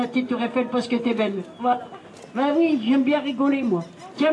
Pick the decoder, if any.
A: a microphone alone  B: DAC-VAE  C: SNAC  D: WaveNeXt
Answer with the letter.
A